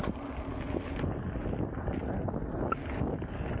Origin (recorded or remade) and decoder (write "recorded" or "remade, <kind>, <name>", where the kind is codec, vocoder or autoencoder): recorded